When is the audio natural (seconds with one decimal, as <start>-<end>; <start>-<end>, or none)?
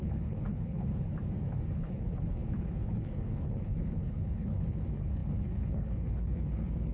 1.1-1.7